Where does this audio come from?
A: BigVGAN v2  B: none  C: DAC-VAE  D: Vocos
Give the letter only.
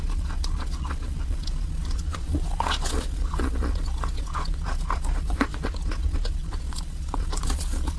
D